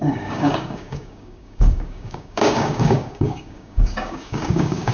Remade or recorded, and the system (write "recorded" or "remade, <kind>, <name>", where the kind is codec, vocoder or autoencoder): remade, codec, DAC